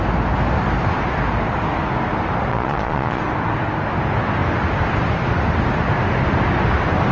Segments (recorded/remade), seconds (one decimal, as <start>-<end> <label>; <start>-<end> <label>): 0.0-2.5 recorded; 2.5-3.2 remade; 3.2-7.1 recorded